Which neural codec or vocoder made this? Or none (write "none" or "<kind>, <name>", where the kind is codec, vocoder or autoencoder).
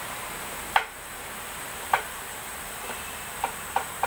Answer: vocoder, BigVGAN v2